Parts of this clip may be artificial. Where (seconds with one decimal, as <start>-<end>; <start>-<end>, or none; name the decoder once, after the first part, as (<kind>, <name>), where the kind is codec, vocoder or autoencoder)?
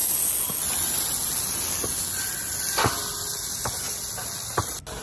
none